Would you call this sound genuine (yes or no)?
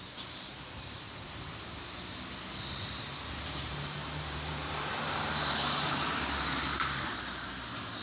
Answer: no